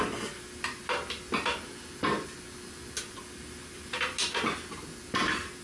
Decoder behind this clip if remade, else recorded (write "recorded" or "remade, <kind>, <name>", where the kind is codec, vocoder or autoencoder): recorded